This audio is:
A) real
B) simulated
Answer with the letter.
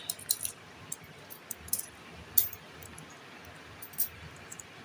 A